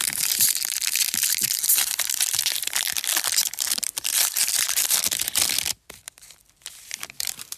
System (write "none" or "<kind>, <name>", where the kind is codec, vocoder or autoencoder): vocoder, BigVGAN v2